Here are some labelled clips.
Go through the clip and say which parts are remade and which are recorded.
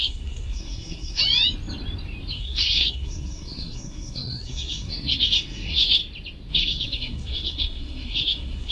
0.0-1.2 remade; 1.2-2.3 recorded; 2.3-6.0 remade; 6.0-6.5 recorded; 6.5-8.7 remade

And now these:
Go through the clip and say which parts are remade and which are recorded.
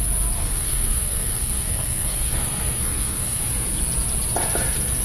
0.0-0.4 recorded; 0.4-3.4 remade; 3.4-5.0 recorded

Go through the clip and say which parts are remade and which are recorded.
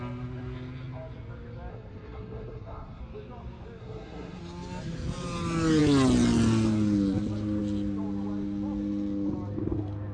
0.0-1.7 recorded; 1.7-3.0 remade; 3.0-3.8 recorded; 3.8-4.4 remade; 4.4-10.1 recorded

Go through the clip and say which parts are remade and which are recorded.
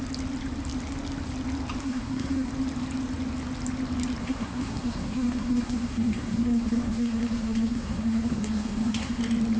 0.0-1.8 recorded; 1.8-2.5 remade; 2.5-4.2 recorded; 4.2-9.2 remade; 9.2-9.6 recorded